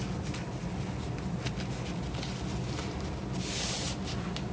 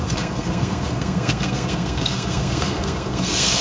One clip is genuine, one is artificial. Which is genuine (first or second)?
first